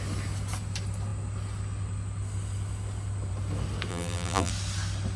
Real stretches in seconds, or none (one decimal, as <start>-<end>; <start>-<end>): 0.0-3.9; 4.5-5.2